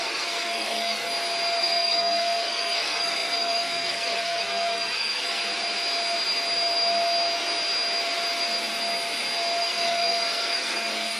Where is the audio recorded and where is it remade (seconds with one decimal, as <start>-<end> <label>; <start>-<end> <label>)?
0.0-1.1 remade; 1.1-1.6 recorded; 1.6-5.4 remade; 5.4-9.6 recorded; 9.6-11.2 remade